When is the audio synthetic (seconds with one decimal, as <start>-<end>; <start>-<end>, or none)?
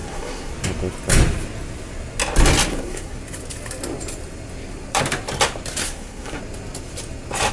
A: 0.0-0.5; 2.7-3.2; 5.8-6.4